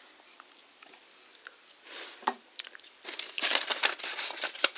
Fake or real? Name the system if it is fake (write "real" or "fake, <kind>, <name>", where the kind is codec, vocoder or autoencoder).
fake, vocoder, BigVGAN v2